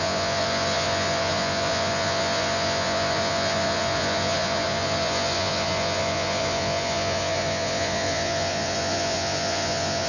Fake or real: fake